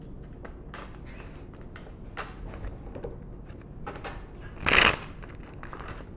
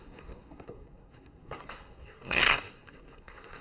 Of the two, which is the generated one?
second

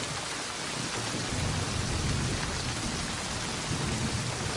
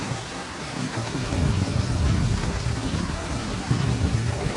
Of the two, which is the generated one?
second